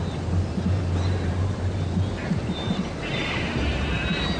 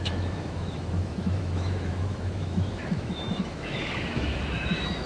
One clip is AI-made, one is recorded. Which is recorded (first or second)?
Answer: first